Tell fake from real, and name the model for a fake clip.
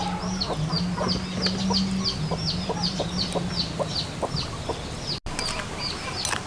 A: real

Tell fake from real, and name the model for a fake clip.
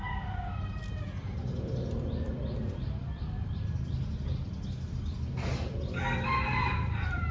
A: real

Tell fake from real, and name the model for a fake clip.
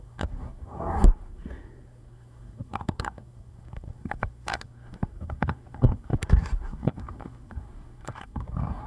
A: fake, codec, SNAC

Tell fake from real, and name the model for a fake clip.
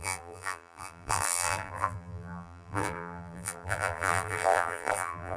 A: fake, vocoder, BigVGAN v2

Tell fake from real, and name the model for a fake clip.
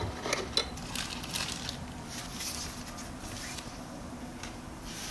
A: real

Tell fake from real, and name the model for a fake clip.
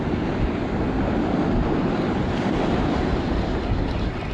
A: real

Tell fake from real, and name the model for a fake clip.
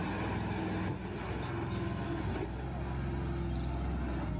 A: real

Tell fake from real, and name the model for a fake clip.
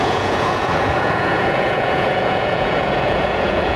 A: fake, vocoder, Vocos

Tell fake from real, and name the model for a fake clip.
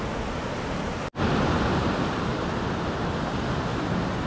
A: real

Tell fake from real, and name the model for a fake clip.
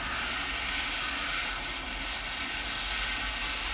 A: real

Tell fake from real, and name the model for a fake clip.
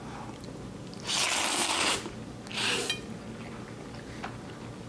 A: real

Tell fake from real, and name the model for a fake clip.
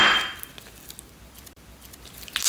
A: real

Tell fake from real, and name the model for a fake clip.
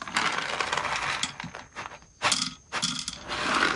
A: real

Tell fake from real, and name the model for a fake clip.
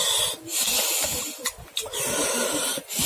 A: real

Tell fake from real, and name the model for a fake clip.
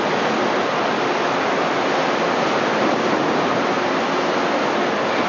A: real